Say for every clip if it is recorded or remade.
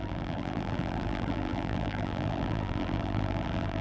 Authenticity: remade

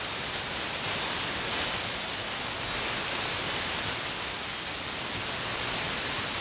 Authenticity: recorded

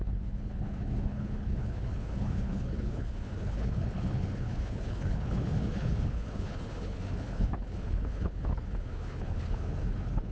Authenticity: remade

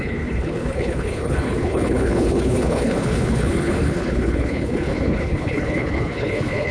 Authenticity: remade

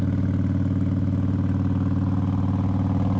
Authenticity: recorded